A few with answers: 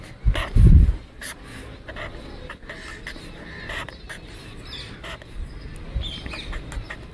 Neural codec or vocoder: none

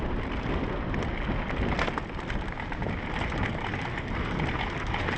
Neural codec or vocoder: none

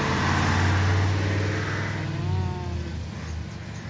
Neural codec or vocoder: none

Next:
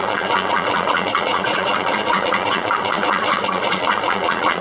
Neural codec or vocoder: vocoder, Vocos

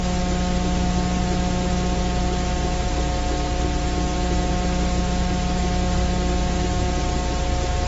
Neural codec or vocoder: none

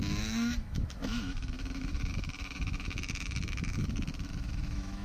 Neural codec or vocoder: autoencoder, DAC-VAE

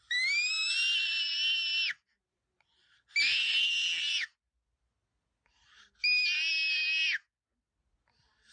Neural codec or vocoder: none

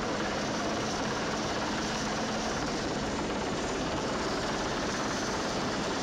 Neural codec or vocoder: vocoder, BigVGAN v2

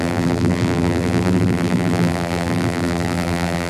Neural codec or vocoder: vocoder, BigVGAN v2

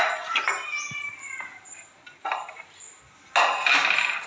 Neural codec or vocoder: none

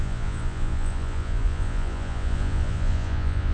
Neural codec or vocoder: vocoder, Vocos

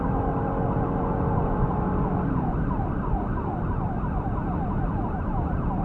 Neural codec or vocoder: none